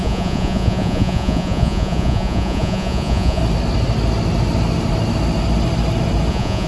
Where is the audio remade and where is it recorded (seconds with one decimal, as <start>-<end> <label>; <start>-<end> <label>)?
0.0-3.4 remade; 3.4-6.3 recorded; 6.3-6.7 remade